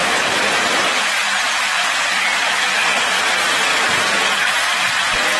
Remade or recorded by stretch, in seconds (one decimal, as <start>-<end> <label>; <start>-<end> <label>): 0.0-3.2 remade; 3.2-5.4 recorded